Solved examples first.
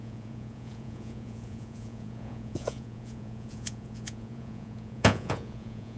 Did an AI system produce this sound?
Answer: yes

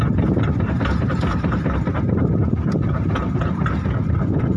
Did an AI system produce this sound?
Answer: yes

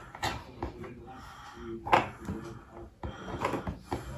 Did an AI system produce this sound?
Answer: no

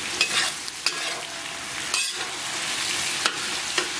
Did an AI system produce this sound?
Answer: no